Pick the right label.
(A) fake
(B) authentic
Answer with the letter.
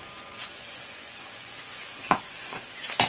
A